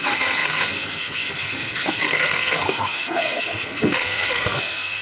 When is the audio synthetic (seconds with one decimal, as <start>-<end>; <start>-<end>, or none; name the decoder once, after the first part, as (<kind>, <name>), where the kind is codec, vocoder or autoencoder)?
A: 0.0-5.0 (codec, SNAC)